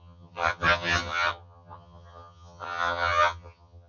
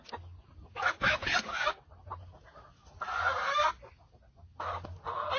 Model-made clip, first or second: first